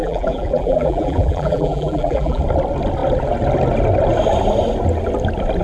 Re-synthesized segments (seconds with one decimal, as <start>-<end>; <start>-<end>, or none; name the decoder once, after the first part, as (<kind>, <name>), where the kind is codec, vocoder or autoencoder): 0.0-2.4 (vocoder, BigVGAN v2)